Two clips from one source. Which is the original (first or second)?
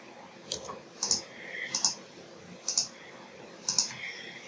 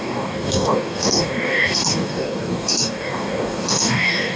first